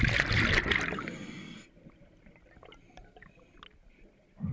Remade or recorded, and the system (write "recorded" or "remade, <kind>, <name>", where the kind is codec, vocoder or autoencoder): recorded